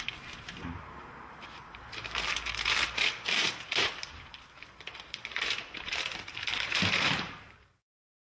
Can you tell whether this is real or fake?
fake